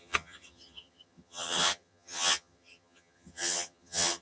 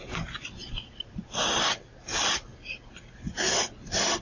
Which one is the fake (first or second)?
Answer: first